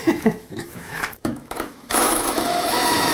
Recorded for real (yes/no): no